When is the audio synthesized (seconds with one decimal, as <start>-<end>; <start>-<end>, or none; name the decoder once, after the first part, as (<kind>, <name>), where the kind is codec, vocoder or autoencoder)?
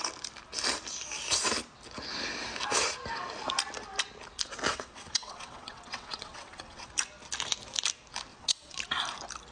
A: 4.7-6.9 (vocoder, WaveNeXt); 8.3-8.8